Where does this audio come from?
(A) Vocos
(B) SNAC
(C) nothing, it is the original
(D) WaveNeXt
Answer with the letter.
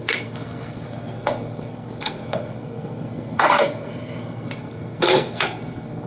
B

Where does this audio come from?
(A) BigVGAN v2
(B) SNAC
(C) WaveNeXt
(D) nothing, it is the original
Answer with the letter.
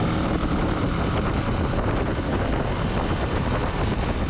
D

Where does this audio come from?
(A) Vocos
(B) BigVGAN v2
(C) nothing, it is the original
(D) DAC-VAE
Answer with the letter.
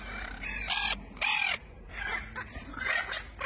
B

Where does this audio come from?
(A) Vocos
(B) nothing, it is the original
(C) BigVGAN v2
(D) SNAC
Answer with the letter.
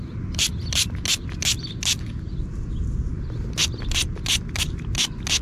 B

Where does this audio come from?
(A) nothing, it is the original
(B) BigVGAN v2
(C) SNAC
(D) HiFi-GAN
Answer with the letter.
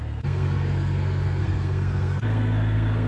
C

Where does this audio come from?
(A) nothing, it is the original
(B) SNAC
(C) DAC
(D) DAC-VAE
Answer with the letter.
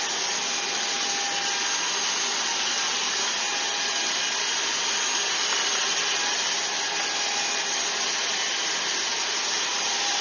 A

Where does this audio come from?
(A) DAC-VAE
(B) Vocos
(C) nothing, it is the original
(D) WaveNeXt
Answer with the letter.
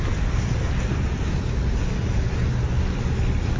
C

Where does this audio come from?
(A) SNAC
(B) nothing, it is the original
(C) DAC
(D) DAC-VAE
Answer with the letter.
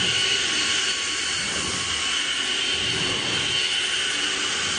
B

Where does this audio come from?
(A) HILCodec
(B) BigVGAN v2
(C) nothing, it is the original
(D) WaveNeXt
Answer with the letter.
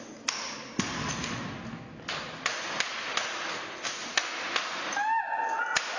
C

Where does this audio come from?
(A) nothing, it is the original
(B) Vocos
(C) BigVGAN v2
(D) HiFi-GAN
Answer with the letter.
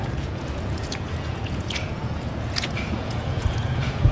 B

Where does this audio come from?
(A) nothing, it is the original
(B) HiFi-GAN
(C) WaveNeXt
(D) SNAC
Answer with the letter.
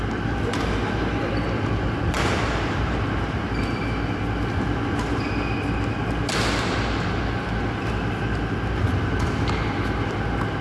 A